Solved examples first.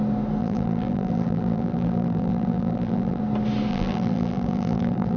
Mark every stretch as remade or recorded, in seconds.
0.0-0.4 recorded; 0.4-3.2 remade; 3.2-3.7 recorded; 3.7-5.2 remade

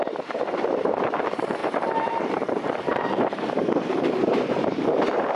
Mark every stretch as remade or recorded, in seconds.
0.0-5.4 remade

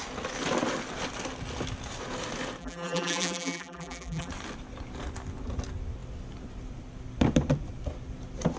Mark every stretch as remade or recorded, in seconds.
0.0-2.6 recorded; 2.6-4.3 remade; 4.3-8.6 recorded

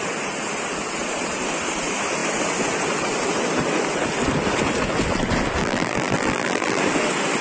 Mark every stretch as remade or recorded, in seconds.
0.0-5.6 recorded; 5.6-6.8 remade; 6.8-7.4 recorded

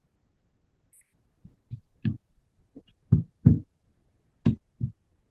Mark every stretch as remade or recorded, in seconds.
0.0-1.1 recorded; 1.1-4.3 remade; 4.3-5.3 recorded